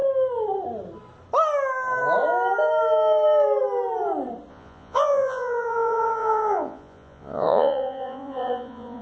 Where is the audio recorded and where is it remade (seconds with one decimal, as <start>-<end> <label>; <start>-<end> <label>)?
0.0-4.5 recorded; 4.5-9.0 remade